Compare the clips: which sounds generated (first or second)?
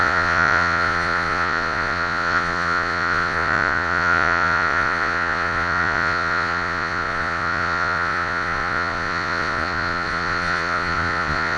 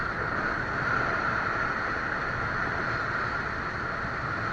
first